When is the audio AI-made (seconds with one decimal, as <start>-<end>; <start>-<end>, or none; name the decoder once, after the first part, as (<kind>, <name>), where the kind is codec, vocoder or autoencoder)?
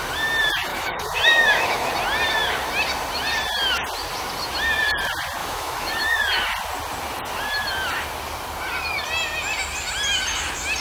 0.7-1.9 (autoencoder, DAC-VAE); 5.4-6.2